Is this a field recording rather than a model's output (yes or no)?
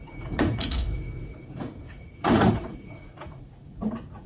no